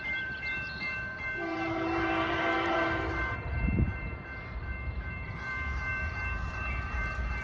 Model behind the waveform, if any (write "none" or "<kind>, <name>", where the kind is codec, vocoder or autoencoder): vocoder, BigVGAN v2